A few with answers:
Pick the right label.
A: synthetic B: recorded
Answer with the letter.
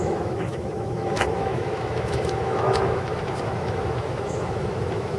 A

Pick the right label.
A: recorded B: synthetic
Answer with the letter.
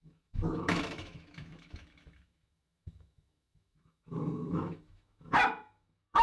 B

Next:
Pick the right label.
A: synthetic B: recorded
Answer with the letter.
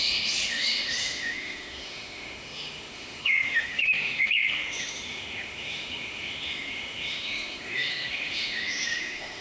A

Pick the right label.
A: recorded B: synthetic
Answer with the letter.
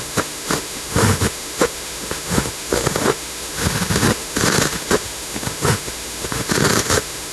B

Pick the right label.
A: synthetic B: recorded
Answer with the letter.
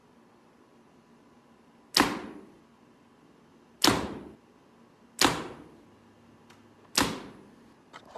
B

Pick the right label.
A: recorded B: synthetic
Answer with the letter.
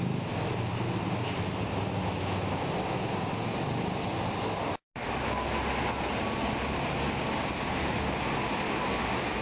A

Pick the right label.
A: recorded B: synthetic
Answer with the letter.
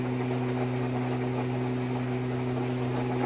A